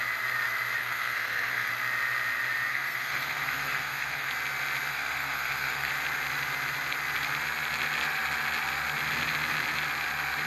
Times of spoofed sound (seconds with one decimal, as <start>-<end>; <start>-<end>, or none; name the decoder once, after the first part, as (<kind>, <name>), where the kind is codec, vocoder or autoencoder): 0.8-1.7 (codec, SNAC); 2.7-4.3; 4.9-5.9